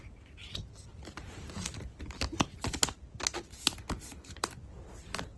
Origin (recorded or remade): recorded